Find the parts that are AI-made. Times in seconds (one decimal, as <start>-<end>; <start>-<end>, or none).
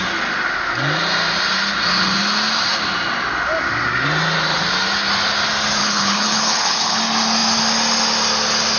5.8-7.0